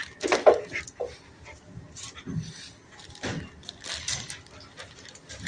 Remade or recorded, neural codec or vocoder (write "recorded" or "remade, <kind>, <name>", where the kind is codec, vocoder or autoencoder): recorded